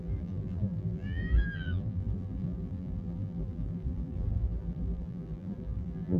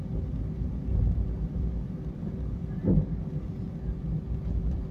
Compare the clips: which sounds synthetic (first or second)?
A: first